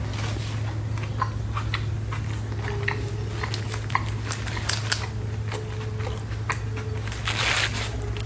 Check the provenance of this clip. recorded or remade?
recorded